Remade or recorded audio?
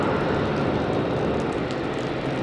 recorded